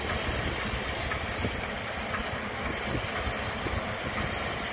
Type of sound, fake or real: real